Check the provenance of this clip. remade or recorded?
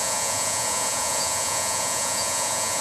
remade